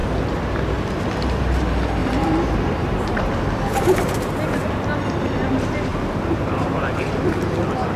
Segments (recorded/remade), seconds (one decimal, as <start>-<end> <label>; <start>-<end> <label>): 0.0-2.0 recorded; 2.0-4.3 remade; 4.3-5.9 recorded; 5.9-7.1 remade; 7.1-8.0 recorded

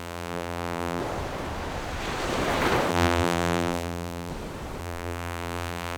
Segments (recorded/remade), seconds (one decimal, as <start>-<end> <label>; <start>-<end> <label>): 0.0-1.0 remade; 1.0-2.9 recorded; 2.9-4.3 remade; 4.3-4.8 recorded; 4.8-6.0 remade

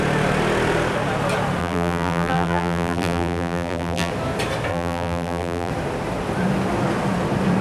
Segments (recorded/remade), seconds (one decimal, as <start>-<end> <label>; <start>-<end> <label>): 0.0-1.6 recorded; 1.6-4.1 remade; 4.1-4.7 recorded; 4.7-5.7 remade; 5.7-7.6 recorded